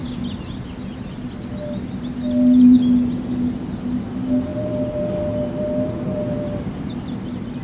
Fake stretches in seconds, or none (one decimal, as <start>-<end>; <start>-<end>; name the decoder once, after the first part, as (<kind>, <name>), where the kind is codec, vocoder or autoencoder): none